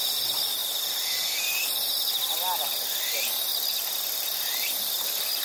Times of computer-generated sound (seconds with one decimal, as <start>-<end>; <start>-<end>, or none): 0.0-0.6; 2.7-3.5; 4.4-5.4